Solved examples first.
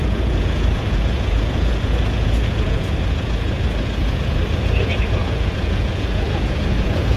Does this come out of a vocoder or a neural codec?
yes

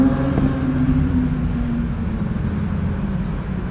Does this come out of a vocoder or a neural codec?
no